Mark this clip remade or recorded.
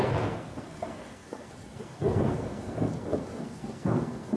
remade